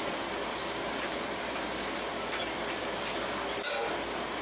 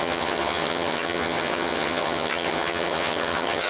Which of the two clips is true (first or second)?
first